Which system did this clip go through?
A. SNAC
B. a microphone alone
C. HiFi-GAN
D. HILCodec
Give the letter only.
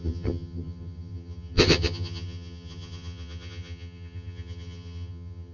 C